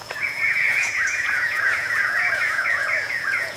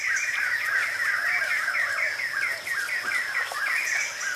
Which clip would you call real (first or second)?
second